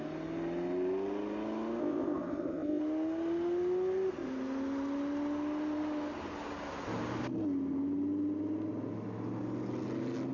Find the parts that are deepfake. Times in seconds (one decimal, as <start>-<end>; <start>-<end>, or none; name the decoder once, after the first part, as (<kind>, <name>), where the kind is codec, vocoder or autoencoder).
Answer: 1.8-2.8 (codec, ZipCodec)